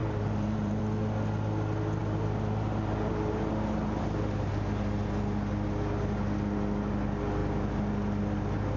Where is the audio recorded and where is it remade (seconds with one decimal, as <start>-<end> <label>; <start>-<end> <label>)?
0.0-0.8 remade; 0.8-2.0 recorded; 2.0-4.5 remade; 4.5-8.8 recorded